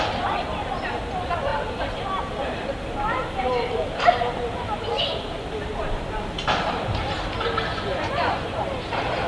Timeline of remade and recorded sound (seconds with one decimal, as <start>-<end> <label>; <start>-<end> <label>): 0.0-7.7 recorded; 7.7-8.6 remade; 8.6-9.3 recorded